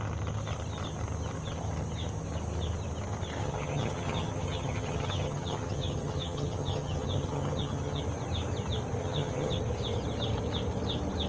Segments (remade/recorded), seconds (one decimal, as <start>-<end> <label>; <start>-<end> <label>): 0.0-3.4 recorded; 3.4-8.0 remade; 8.0-9.0 recorded; 9.0-9.6 remade; 9.6-11.3 recorded